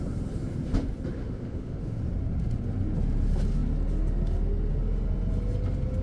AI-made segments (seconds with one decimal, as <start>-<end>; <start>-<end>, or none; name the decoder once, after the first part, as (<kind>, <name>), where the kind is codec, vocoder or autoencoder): 1.2-2.0 (autoencoder, DAC-VAE)